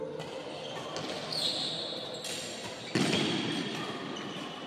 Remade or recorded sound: recorded